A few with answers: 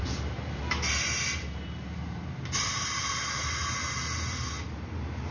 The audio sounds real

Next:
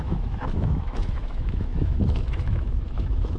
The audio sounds fake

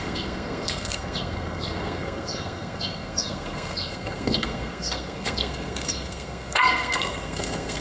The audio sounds fake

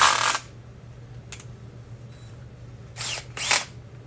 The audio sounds real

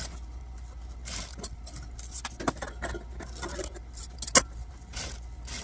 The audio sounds real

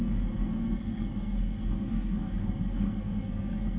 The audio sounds fake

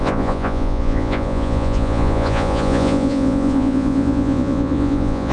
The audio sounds fake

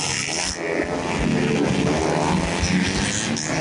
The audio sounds real